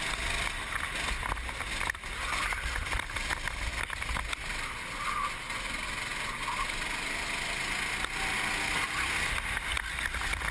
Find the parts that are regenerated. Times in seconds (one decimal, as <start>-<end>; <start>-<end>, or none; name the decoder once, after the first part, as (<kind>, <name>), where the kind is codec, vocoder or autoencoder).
3.7-4.3 (vocoder, BigVGAN v2)